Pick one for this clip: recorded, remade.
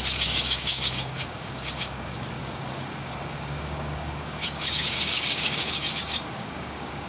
remade